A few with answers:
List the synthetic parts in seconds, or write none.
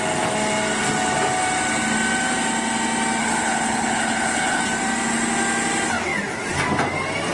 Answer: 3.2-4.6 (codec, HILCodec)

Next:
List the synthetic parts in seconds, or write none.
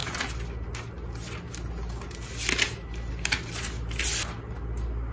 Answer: none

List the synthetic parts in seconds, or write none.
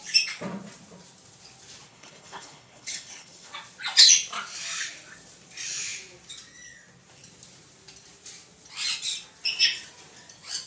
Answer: 1.9-3.5 (codec, HILCodec)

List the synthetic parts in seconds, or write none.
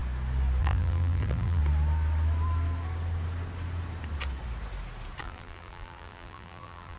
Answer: 0.6-1.6 (vocoder, BigVGAN v2); 5.2-7.0